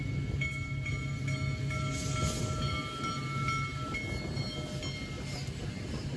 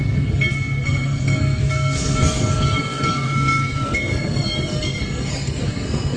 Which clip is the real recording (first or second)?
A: first